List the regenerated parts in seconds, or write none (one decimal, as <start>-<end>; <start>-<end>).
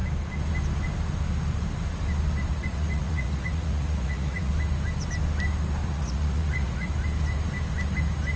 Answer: 2.5-4.5; 5.8-6.9